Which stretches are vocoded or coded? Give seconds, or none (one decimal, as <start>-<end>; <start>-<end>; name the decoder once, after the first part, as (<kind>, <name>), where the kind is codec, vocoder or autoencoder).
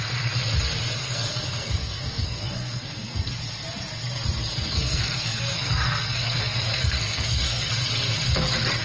1.0-3.3 (codec, SNAC); 4.5-7.7